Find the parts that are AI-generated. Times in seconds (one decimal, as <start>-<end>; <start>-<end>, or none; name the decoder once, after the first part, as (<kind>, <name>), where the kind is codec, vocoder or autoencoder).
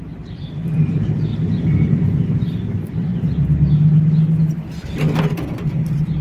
0.0-1.3 (vocoder, BigVGAN v2); 2.2-3.1; 5.2-6.2